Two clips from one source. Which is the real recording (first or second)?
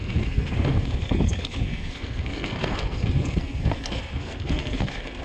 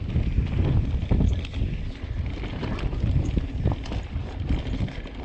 second